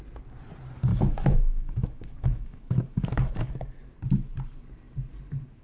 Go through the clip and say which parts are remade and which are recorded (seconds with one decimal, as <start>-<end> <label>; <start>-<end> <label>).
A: 0.0-0.9 recorded; 0.9-3.5 remade; 3.5-5.6 recorded